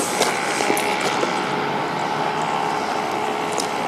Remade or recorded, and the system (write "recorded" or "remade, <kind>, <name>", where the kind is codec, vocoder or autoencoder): recorded